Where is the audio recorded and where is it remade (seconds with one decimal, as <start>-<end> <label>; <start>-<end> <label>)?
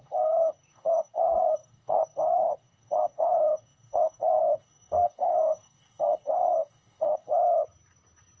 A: 0.0-7.3 remade; 7.3-8.4 recorded